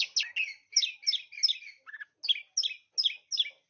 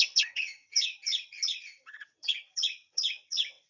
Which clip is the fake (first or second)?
second